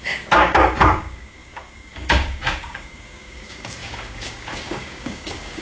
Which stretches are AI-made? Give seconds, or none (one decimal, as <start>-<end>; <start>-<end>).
0.0-5.6